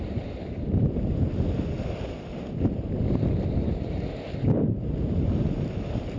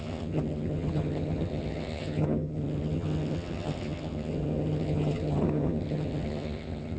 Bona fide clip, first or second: first